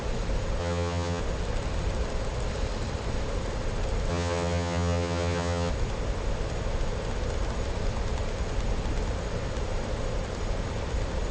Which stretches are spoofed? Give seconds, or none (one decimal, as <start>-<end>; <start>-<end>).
0.6-1.2; 4.1-5.7